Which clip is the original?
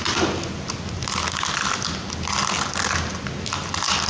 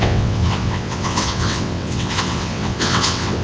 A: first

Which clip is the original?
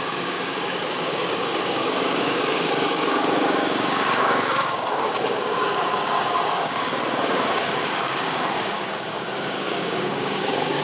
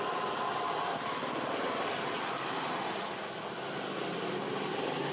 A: second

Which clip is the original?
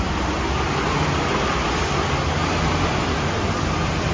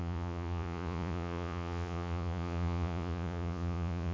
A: first